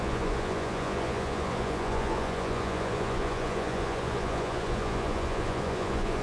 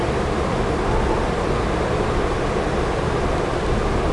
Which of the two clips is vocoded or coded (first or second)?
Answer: first